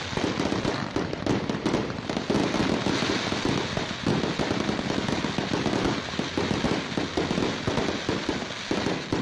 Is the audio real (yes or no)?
yes